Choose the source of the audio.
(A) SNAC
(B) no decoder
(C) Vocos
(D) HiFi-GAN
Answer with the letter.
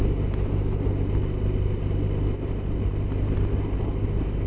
B